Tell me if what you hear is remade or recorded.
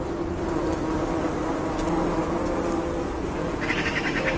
recorded